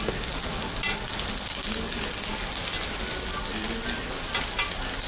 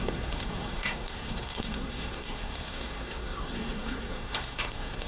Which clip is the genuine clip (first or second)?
first